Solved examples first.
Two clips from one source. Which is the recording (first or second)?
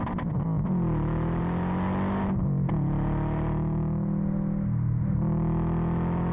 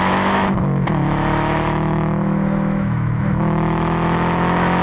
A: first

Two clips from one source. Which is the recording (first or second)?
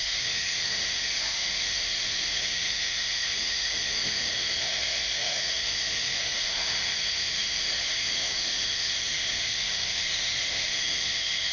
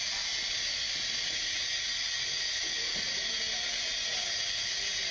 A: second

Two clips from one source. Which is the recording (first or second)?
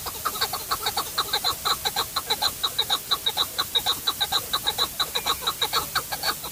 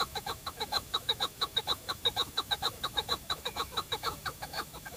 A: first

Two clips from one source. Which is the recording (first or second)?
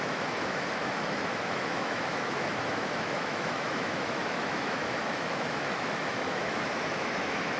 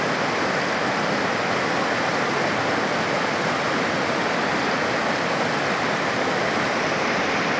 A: second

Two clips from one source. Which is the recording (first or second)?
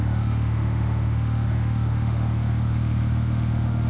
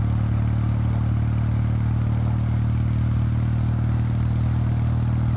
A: second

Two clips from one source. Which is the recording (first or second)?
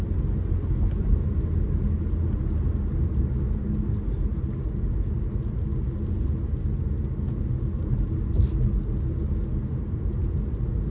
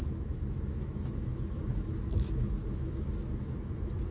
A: first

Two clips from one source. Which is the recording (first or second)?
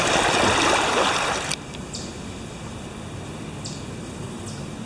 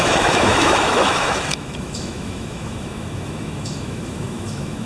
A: first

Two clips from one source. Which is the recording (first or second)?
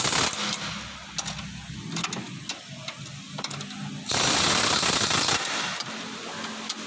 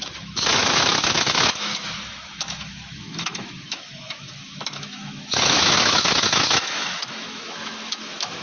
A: first